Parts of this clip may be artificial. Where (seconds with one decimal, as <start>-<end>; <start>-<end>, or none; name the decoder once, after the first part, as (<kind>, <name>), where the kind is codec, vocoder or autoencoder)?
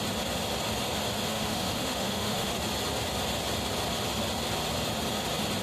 1.3-2.6 (autoencoder, DAC-VAE)